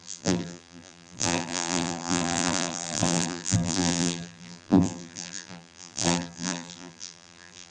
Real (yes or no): no